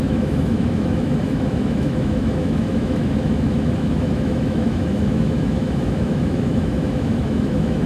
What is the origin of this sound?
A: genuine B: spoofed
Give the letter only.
B